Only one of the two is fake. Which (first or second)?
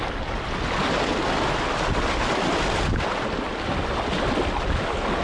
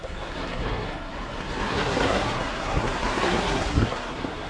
second